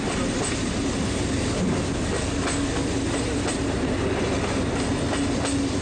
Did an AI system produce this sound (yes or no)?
no